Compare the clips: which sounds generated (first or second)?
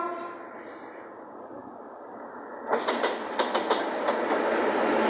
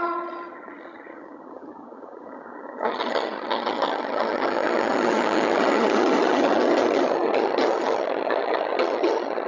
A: second